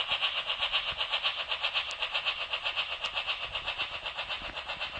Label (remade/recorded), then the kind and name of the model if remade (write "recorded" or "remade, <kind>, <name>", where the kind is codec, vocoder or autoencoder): recorded